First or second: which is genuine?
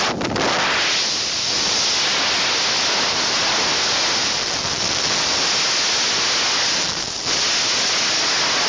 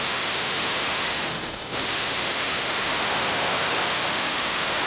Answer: first